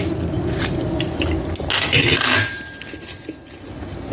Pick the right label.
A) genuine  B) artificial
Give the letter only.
A